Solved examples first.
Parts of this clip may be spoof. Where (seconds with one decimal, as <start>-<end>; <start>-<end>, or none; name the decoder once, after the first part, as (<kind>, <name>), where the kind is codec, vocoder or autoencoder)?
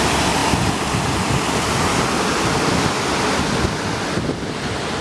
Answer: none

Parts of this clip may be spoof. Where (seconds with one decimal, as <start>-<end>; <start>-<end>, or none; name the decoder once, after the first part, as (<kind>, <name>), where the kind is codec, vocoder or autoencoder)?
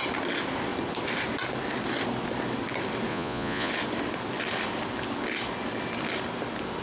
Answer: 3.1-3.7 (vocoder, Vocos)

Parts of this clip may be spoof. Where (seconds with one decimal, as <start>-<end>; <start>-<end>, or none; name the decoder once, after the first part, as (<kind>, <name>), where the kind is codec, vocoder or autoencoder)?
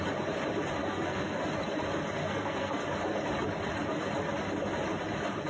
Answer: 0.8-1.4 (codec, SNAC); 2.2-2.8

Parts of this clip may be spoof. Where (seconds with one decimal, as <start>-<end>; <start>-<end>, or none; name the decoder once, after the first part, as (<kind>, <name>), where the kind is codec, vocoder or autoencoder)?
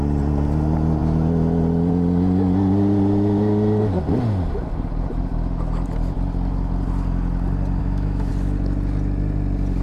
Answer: 7.8-8.3 (autoencoder, DAC-VAE)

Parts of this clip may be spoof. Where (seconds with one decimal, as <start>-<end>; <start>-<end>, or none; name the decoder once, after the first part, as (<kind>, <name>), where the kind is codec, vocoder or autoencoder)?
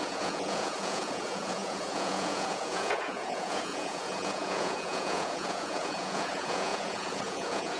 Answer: 0.0-7.8 (vocoder, Vocos)